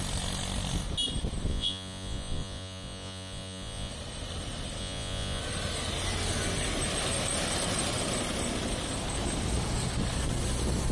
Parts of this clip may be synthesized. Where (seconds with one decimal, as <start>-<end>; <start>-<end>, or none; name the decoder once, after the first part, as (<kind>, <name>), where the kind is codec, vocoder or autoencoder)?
1.5-3.9 (vocoder, Vocos); 4.8-5.4